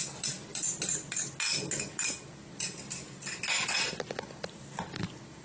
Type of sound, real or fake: real